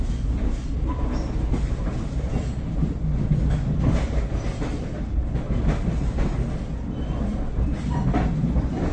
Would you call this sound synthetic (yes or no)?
no